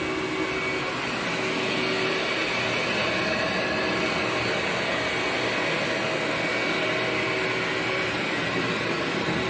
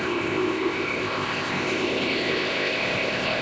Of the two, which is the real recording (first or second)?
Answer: first